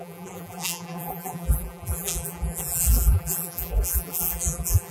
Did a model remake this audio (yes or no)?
yes